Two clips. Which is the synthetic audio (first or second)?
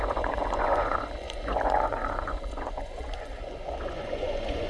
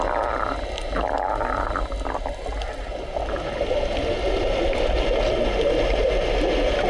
first